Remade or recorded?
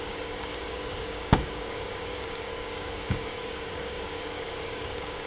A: remade